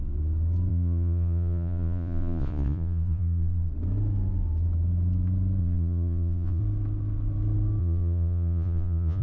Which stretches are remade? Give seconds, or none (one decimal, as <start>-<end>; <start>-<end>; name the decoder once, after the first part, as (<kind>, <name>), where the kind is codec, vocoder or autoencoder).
0.7-3.7 (vocoder, Vocos); 5.6-6.6; 7.8-9.2